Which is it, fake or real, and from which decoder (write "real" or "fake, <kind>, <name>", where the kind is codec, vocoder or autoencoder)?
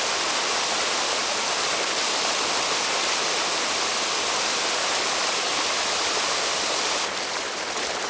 real